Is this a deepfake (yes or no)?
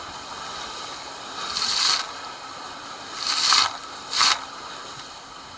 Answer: no